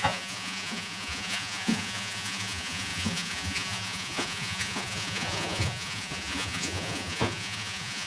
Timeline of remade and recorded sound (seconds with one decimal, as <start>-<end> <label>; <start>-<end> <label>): 0.0-8.1 remade